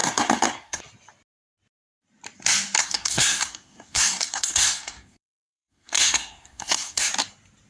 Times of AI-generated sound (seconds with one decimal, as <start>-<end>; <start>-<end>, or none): 0.0-0.8; 2.8-7.1